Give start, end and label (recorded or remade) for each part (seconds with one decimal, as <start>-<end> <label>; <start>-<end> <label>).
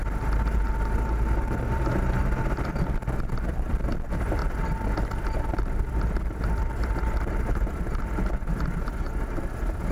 0.0-1.4 recorded; 1.4-1.9 remade; 1.9-3.3 recorded; 3.3-4.4 remade; 4.4-5.6 recorded; 5.6-9.9 remade